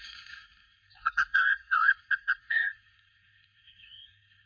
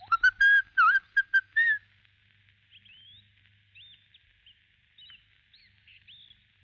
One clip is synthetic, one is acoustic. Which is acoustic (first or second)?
second